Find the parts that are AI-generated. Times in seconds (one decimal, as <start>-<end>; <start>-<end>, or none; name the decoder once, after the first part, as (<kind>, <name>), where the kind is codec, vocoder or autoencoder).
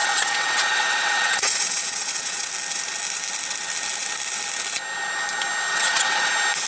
0.0-2.5 (vocoder, WaveNeXt); 5.7-6.3